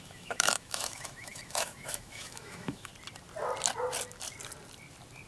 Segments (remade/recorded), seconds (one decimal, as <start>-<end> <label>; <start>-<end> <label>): 0.0-2.9 remade; 2.9-5.3 recorded